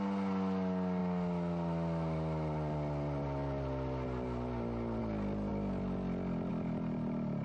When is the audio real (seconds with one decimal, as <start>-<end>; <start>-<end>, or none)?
0.0-7.4